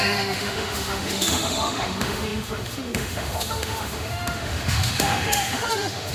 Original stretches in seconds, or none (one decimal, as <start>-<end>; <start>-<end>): none